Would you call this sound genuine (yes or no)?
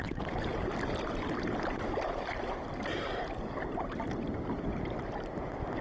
yes